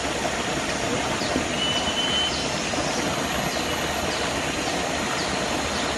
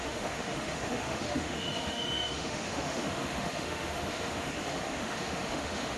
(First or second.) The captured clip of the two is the first